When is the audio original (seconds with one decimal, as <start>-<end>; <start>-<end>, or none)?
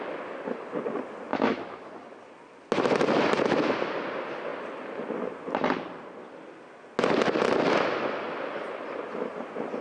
0.0-1.3; 1.9-9.8